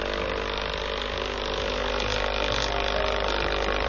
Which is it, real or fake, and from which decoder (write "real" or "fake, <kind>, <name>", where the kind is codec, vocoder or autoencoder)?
real